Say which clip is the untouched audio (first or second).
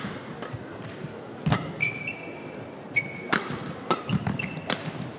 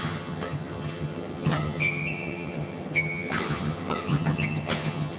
first